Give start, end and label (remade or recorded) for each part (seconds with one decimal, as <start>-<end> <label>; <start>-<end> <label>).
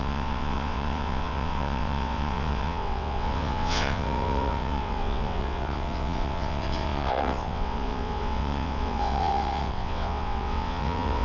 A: 0.0-11.2 remade